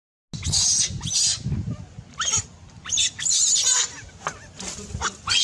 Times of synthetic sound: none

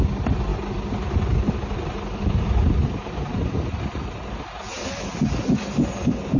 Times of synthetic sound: none

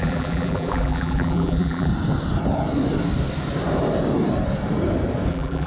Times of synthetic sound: 0.0-1.9 (vocoder, BigVGAN v2); 5.3-5.7